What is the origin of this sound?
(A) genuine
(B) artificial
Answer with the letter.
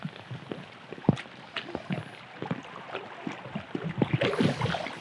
A